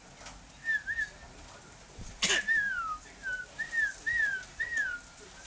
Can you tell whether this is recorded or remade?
recorded